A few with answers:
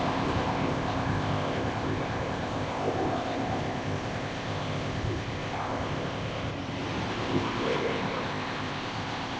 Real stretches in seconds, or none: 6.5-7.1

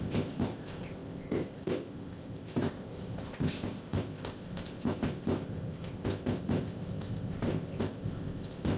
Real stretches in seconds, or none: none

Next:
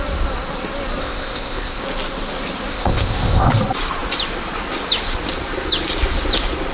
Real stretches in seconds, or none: 0.0-1.0; 1.8-2.7; 3.5-6.7